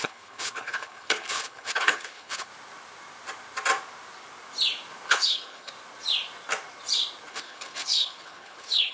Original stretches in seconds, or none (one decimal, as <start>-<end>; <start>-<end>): 2.5-5.1; 5.7-7.3

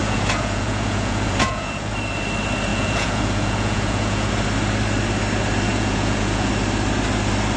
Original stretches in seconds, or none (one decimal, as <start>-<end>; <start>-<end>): 1.9-2.7; 4.3-5.7; 6.5-7.6